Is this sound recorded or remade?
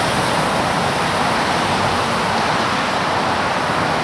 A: recorded